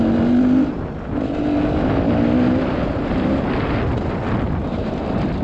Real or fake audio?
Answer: real